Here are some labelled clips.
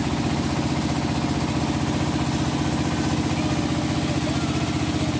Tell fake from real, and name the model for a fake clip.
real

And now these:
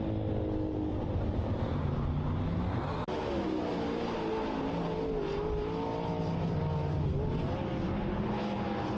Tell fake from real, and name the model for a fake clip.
real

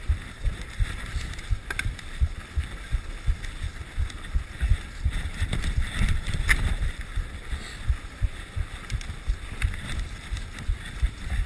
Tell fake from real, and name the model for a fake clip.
real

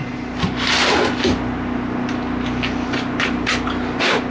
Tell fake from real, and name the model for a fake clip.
real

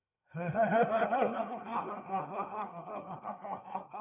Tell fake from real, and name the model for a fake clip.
fake, codec, SNAC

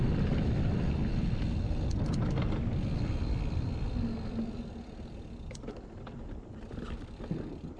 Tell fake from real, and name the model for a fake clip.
real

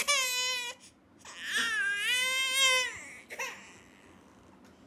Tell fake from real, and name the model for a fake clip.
real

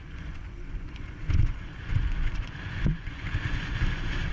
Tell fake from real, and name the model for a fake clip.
fake, vocoder, Vocos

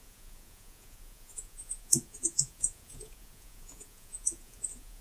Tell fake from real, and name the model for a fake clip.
fake, vocoder, Vocos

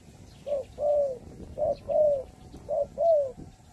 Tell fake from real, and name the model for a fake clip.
real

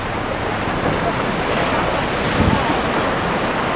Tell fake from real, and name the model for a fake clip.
real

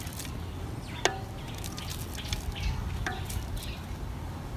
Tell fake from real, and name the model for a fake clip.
real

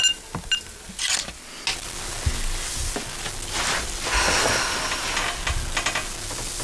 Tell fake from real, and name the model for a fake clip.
real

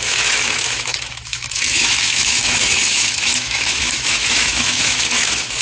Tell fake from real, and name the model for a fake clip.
fake, autoencoder, DAC-VAE